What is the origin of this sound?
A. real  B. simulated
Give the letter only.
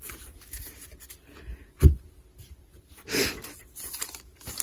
A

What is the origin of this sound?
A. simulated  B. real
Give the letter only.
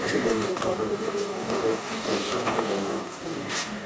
A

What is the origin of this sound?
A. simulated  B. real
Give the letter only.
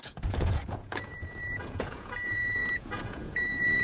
A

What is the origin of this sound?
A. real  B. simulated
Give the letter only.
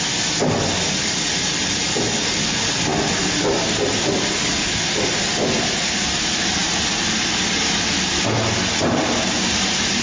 A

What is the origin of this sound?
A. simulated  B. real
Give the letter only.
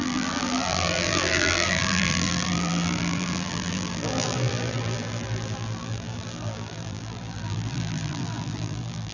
A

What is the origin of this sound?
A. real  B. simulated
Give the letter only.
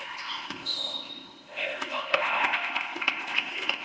B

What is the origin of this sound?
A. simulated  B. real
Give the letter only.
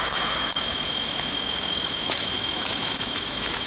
A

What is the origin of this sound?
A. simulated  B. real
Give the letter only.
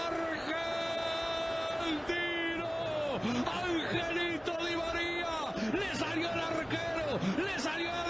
B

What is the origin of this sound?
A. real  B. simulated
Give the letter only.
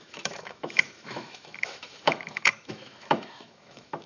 B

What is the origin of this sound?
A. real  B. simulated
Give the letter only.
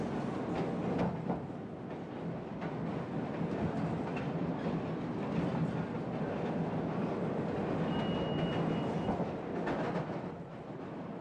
A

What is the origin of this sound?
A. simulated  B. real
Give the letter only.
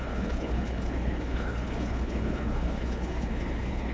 A